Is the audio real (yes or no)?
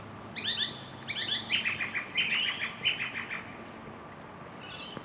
yes